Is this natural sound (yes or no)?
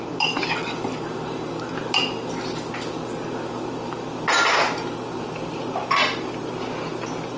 yes